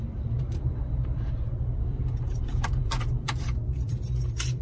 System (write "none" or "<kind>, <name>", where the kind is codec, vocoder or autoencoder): vocoder, BigVGAN v2